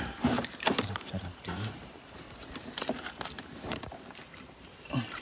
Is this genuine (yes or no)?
no